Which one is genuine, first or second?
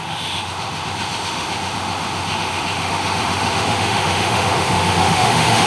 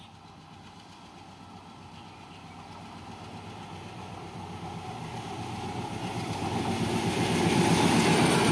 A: second